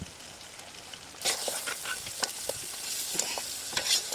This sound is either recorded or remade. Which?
recorded